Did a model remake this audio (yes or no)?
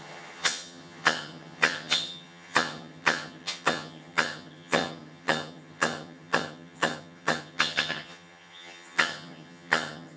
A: yes